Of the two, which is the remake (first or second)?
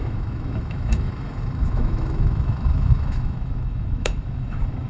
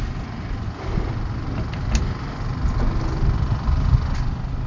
first